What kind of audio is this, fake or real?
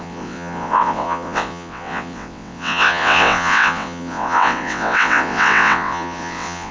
fake